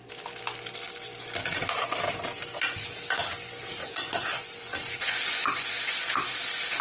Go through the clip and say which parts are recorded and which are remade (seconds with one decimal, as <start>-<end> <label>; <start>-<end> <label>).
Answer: 0.0-3.8 recorded; 3.8-6.1 remade; 6.1-6.8 recorded